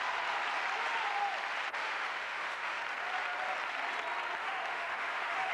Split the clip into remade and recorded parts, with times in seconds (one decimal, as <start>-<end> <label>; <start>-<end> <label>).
0.0-1.8 recorded; 1.8-2.8 remade; 2.8-4.4 recorded; 4.4-5.5 remade